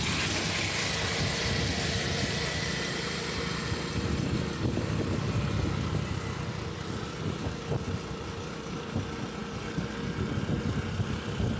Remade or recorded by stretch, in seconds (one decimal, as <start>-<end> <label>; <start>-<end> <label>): 0.0-11.6 recorded